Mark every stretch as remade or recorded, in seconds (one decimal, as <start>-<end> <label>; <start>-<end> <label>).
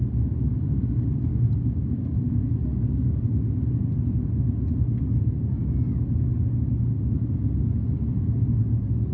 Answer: 0.0-1.3 recorded; 1.3-2.3 remade; 2.3-2.7 recorded; 2.7-3.2 remade; 3.2-9.1 recorded